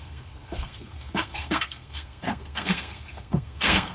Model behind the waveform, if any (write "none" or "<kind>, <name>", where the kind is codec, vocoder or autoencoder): codec, SNAC